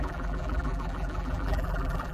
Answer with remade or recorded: remade